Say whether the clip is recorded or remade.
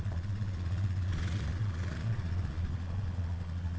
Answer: remade